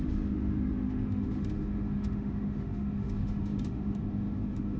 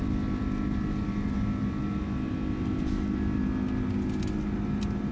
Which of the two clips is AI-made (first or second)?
first